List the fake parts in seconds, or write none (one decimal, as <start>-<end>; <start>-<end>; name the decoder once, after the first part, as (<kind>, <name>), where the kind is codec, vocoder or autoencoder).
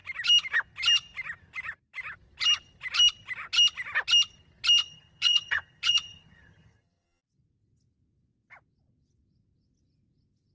4.8-7.2 (vocoder, HiFi-GAN)